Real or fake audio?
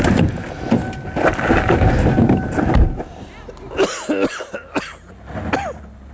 real